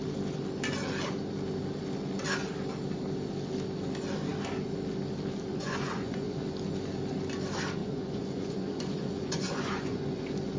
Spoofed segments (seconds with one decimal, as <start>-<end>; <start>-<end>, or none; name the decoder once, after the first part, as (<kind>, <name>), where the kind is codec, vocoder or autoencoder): 5.5-6.4 (vocoder, Vocos); 7.8-10.2